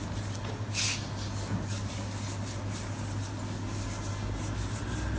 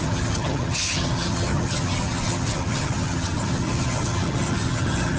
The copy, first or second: second